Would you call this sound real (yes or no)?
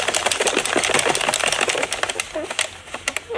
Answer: yes